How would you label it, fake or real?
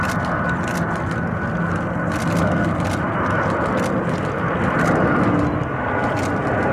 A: real